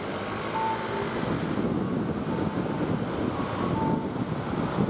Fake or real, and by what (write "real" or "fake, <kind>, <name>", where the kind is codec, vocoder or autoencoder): real